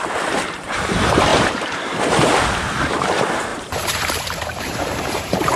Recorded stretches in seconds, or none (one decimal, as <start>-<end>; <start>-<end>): none